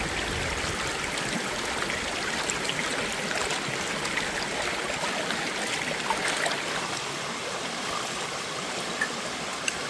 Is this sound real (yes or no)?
yes